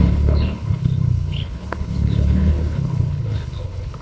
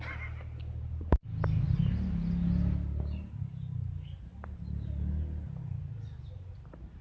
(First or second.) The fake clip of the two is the first